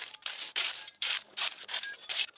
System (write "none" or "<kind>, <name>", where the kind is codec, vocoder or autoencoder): vocoder, BigVGAN v2